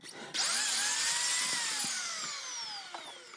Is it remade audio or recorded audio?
recorded